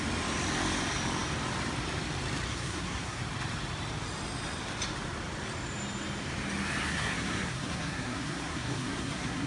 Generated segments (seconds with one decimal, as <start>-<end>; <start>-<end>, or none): 2.5-3.2; 6.9-9.5